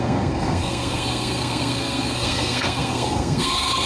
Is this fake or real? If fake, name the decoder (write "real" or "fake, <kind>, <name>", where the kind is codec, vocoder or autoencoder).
fake, codec, SNAC